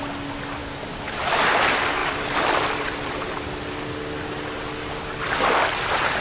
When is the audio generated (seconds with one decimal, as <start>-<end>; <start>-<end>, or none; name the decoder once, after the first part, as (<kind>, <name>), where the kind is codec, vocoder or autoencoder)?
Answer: 2.0-3.8 (vocoder, BigVGAN v2)